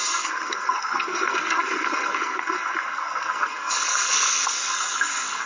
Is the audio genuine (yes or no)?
no